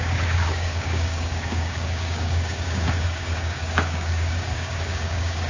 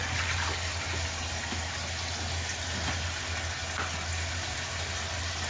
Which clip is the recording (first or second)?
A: second